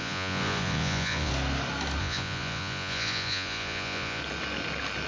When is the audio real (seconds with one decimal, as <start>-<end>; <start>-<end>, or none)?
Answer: 1.3-2.0; 4.2-5.1